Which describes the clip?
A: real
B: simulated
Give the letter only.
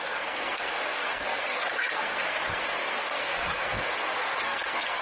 B